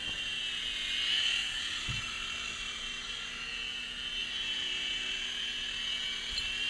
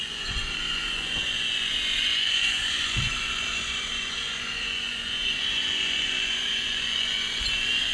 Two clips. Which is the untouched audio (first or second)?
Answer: first